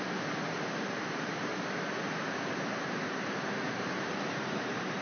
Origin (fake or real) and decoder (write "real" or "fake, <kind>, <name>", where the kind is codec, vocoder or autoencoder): fake, vocoder, BigVGAN v2